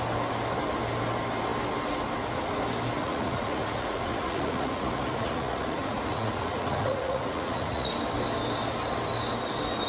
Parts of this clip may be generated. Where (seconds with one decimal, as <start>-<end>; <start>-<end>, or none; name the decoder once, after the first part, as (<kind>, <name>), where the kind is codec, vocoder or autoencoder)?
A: 3.0-7.9 (vocoder, Vocos)